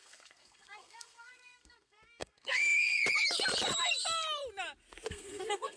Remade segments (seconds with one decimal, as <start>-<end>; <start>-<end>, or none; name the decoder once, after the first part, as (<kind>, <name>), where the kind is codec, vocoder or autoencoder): 0.0-3.0 (codec, SNAC); 5.1-5.8